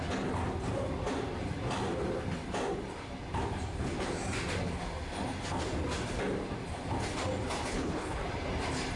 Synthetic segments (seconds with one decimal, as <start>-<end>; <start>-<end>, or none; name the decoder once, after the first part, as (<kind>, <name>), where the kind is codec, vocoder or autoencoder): 7.7-8.3 (codec, HILCodec)